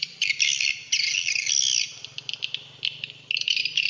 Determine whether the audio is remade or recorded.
recorded